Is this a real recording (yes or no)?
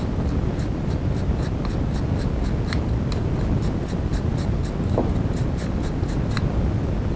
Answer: yes